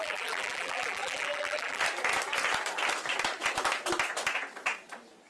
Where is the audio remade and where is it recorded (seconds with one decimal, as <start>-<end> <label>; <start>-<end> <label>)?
0.0-1.8 remade; 1.8-5.3 recorded